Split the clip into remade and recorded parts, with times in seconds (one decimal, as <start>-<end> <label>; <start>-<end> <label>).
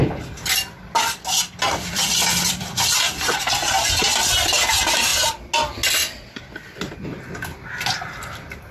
0.0-8.7 recorded